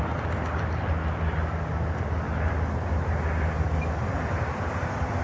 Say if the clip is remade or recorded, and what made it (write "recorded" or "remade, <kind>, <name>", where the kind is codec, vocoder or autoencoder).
recorded